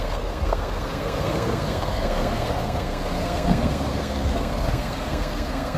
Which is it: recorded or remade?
remade